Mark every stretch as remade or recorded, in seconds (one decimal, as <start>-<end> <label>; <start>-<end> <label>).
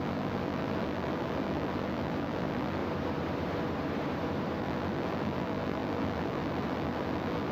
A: 0.0-2.8 remade; 2.8-4.6 recorded; 4.6-7.5 remade